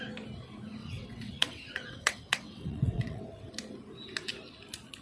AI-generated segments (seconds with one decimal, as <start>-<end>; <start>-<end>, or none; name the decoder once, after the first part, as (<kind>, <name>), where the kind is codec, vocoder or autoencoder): 0.8-3.5 (vocoder, WaveNeXt)